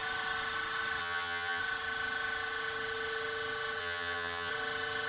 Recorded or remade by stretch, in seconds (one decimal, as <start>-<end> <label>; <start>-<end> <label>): 0.0-1.0 recorded; 1.0-1.6 remade; 1.6-3.8 recorded; 3.8-4.5 remade; 4.5-5.1 recorded